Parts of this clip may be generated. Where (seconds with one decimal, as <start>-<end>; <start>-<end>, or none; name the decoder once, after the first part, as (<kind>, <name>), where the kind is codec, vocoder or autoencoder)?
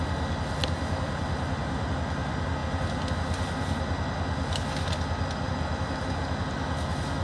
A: 0.6-1.9 (vocoder, BigVGAN v2)